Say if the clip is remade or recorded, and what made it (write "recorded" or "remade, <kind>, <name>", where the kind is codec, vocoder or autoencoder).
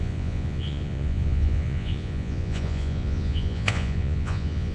remade, vocoder, Vocos